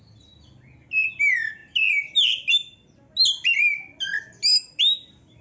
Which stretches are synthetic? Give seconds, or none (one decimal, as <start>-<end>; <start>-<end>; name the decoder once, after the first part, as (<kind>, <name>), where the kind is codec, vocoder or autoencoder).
none